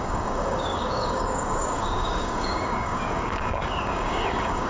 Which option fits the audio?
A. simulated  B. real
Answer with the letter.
A